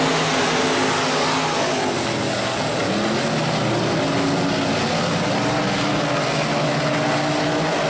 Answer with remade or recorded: recorded